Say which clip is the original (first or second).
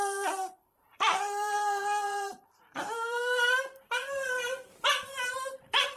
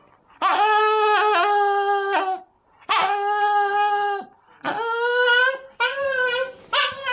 second